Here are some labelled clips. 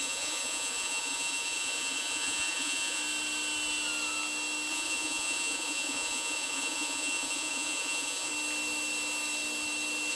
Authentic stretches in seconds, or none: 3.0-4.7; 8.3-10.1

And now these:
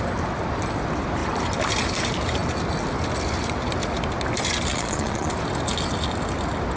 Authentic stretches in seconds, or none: 0.0-4.7; 5.3-6.8

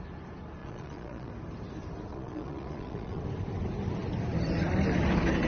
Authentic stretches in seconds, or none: 0.0-0.6; 1.3-2.1; 3.2-5.5

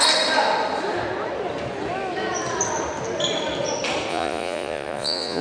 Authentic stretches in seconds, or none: 0.0-4.1